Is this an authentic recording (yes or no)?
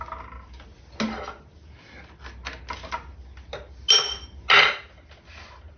yes